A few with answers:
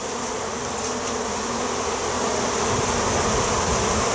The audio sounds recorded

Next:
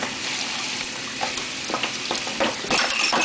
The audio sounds remade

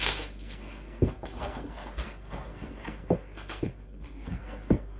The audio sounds remade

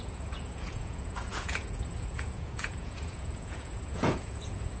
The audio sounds remade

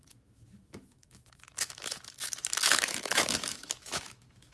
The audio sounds remade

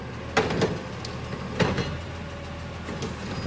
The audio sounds recorded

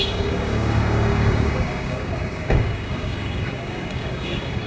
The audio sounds remade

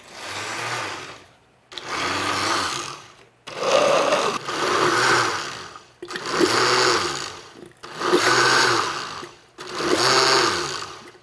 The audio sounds recorded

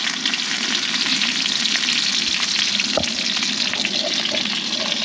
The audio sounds recorded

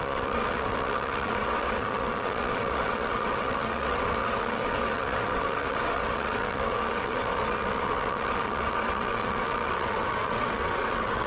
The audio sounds remade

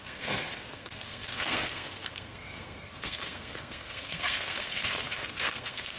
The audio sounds remade